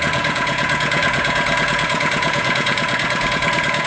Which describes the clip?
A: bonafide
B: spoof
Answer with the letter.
B